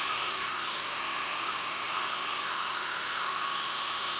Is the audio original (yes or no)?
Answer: no